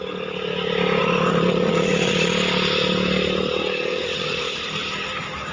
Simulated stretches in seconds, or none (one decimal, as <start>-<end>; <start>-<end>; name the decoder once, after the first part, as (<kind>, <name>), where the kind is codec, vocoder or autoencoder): 1.0-2.3 (vocoder, Vocos); 3.9-4.7